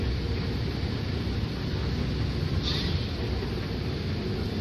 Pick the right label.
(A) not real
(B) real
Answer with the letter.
B